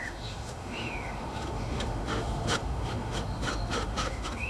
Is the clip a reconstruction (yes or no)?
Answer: yes